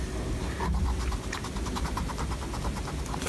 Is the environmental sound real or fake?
real